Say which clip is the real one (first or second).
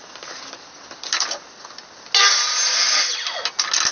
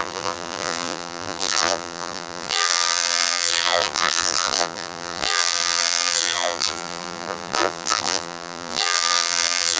first